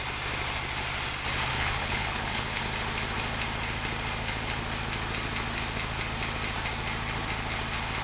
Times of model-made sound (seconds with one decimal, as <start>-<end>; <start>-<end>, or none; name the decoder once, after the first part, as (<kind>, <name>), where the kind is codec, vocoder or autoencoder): 1.5-2.6 (codec, HILCodec)